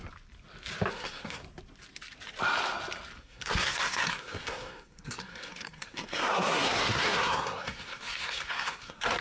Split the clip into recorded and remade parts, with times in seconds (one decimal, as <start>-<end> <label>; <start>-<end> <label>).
0.0-0.9 recorded; 0.9-1.4 remade; 1.4-3.2 recorded; 3.2-9.2 remade